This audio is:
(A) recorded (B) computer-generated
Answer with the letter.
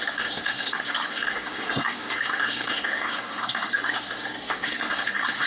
B